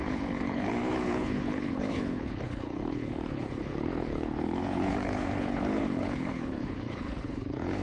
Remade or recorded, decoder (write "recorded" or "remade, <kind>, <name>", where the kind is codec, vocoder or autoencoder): remade, codec, HILCodec